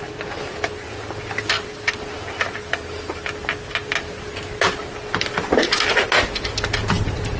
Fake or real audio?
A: real